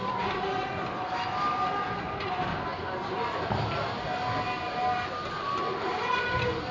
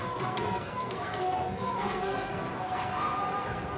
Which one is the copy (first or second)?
second